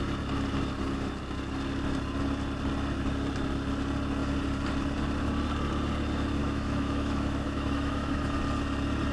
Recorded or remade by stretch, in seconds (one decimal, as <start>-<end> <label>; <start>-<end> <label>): 0.0-6.4 recorded; 6.4-8.2 remade; 8.2-9.1 recorded